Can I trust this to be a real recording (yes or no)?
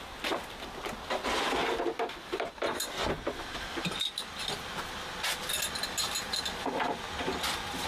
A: yes